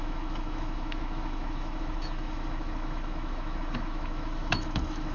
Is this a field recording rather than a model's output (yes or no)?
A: no